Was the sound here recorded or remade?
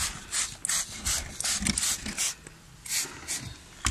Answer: recorded